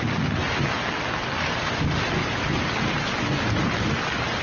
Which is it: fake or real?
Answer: real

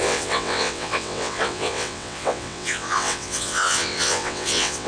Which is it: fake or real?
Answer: fake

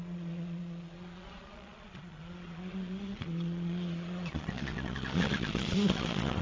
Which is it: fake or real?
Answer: fake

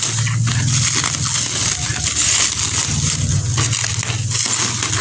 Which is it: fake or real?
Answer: real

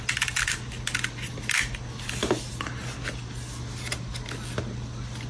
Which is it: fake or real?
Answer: real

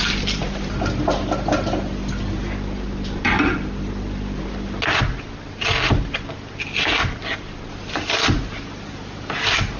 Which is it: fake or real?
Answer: real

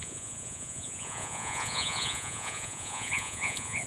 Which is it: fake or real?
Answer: fake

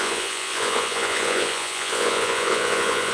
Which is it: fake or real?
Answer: fake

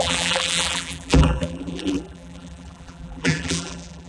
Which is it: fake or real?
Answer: fake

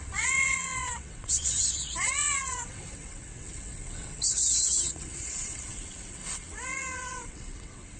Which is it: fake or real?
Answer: fake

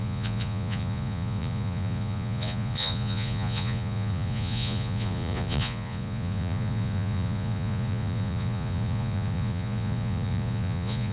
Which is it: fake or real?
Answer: fake